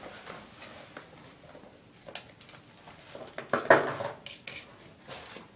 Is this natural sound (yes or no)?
yes